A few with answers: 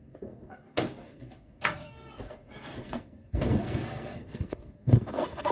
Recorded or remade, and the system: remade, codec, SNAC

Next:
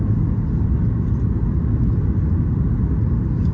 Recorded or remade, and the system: recorded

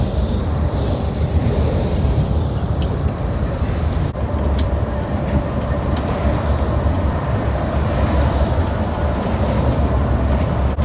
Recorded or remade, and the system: remade, vocoder, BigVGAN v2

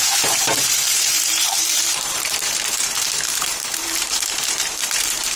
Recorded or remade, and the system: remade, vocoder, BigVGAN v2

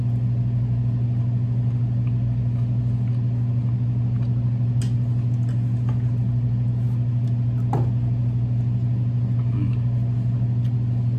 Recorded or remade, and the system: recorded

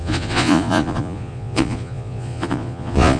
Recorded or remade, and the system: remade, vocoder, Vocos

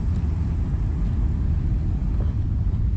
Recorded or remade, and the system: recorded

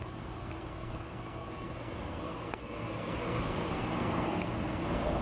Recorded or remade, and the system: remade, codec, SNAC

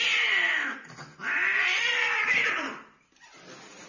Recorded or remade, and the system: recorded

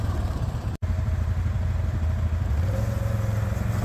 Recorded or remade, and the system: recorded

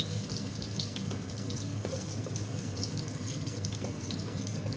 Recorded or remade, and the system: remade, codec, SNAC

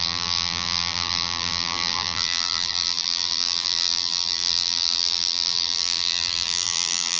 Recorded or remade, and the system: remade, vocoder, BigVGAN v2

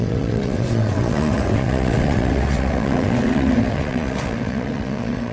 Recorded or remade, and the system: remade, vocoder, WaveNeXt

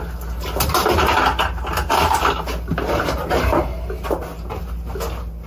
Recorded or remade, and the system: recorded